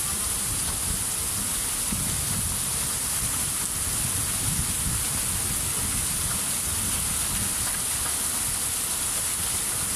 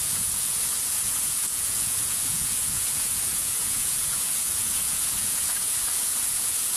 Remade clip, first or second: second